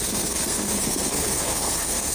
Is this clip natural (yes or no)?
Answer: no